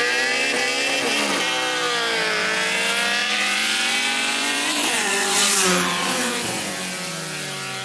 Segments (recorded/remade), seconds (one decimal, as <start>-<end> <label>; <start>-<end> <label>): 0.0-3.2 recorded; 3.2-6.7 remade; 6.7-7.8 recorded